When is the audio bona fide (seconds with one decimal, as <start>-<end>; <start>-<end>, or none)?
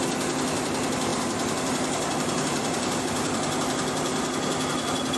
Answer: 0.0-1.1; 3.0-5.2